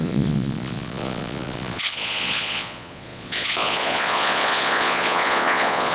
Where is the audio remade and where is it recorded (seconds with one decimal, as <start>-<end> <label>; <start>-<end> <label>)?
0.0-5.9 remade